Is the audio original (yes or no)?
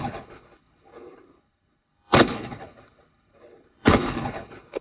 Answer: no